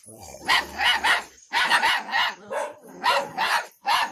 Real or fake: real